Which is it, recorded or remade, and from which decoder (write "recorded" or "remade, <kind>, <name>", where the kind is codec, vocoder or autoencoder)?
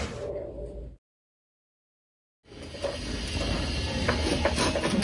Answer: recorded